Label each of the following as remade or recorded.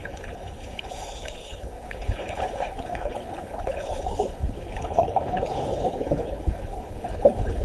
remade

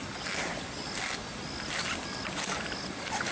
recorded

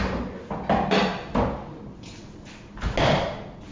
recorded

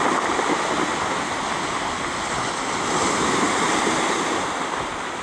recorded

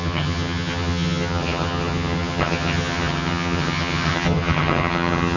remade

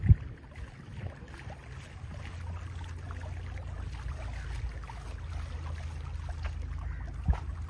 recorded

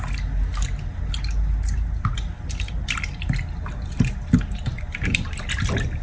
recorded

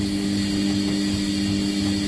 recorded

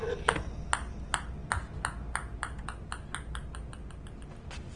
recorded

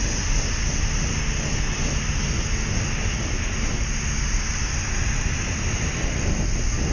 recorded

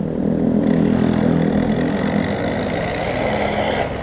recorded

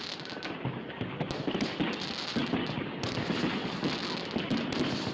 recorded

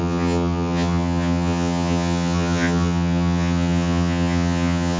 remade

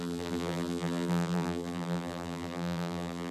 remade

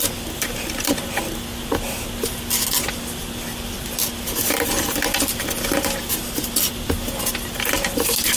recorded